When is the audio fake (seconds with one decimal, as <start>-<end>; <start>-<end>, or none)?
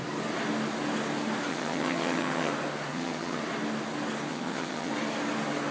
1.5-2.5; 2.9-3.4; 4.3-4.9